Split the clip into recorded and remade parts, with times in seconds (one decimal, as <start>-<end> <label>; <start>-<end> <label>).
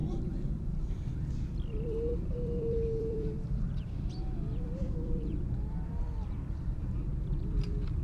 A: 0.0-0.6 recorded; 0.6-8.0 remade